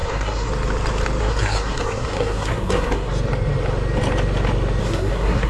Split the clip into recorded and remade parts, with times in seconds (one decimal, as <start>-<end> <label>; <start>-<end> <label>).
0.0-0.5 remade; 0.5-1.2 recorded; 1.2-3.1 remade; 3.1-4.8 recorded; 4.8-5.5 remade